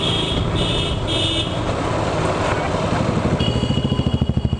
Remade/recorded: recorded